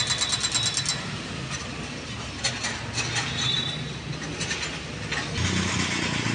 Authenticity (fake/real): real